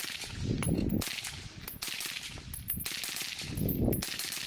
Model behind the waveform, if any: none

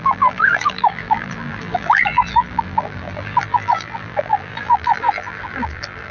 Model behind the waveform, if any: vocoder, BigVGAN v2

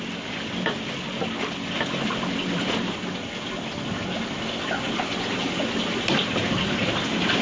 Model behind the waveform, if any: none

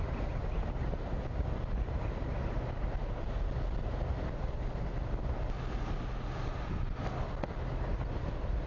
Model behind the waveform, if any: none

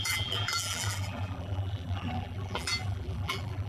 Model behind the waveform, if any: vocoder, BigVGAN v2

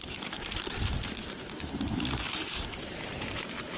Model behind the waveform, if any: vocoder, BigVGAN v2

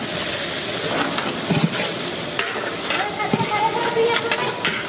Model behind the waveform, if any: none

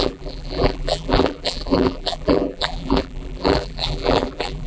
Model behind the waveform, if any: vocoder, BigVGAN v2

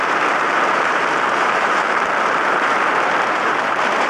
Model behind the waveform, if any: vocoder, BigVGAN v2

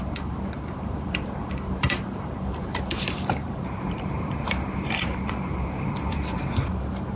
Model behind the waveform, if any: vocoder, BigVGAN v2